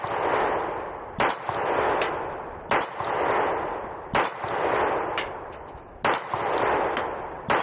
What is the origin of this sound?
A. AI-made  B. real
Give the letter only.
B